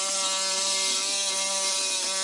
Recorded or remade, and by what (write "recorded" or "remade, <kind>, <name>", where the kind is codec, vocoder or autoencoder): recorded